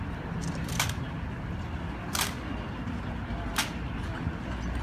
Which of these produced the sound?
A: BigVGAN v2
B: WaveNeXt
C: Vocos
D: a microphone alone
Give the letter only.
D